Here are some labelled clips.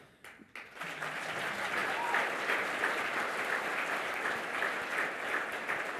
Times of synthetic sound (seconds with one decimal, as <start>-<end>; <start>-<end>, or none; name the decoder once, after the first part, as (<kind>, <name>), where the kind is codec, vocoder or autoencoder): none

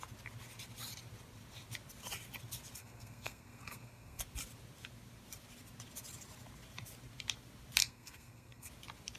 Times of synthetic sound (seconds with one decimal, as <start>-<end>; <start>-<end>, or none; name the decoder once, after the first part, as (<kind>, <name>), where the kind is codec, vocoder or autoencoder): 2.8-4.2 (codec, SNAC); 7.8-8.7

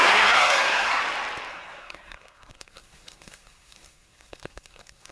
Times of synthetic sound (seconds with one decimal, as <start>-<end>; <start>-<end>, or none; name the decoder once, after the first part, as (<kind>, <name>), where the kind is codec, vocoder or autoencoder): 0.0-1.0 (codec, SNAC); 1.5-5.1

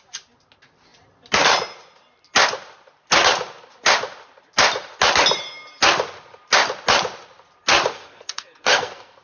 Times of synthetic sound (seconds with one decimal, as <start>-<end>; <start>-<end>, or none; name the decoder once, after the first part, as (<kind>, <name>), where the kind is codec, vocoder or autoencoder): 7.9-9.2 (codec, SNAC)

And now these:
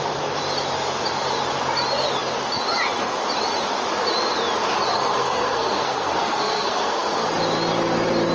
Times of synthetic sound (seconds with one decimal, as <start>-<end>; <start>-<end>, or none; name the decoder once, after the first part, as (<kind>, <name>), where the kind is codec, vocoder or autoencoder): 4.9-7.3 (codec, SNAC)